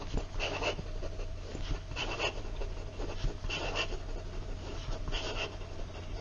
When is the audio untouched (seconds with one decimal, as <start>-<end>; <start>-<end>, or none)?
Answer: 0.0-6.2